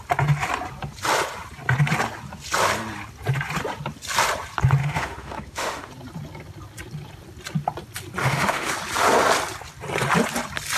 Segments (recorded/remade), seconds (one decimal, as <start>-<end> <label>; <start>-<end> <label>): 0.0-4.8 recorded; 4.8-5.9 remade; 5.9-8.2 recorded; 8.2-8.7 remade; 8.7-10.8 recorded